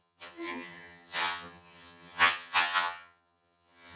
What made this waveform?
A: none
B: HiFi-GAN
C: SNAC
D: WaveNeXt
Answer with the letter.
B